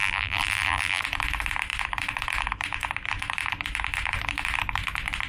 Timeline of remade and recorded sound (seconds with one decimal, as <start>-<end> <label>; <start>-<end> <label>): 0.0-1.0 remade; 1.0-5.3 recorded